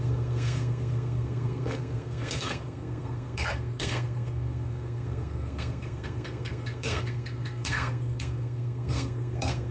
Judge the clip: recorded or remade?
remade